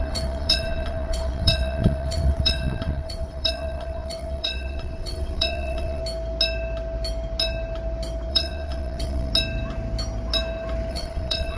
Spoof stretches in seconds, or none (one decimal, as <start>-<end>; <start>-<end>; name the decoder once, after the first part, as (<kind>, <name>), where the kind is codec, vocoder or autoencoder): 0.0-6.0 (vocoder, WaveNeXt); 8.3-9.3; 10.9-11.6